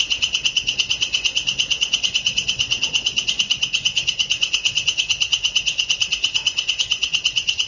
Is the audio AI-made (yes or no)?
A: yes